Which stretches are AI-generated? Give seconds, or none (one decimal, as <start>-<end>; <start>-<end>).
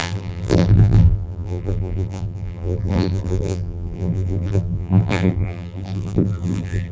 0.0-6.9